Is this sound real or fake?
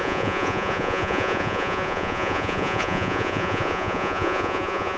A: fake